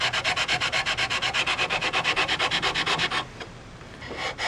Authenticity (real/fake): real